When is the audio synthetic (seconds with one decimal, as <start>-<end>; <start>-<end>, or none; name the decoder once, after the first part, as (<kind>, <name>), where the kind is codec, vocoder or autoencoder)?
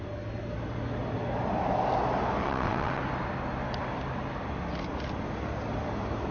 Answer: 2.4-3.0 (vocoder, WaveNeXt)